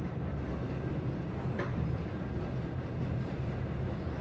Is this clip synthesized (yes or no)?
no